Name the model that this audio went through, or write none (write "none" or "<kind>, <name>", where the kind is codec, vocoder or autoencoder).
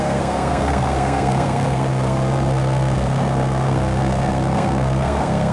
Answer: codec, SNAC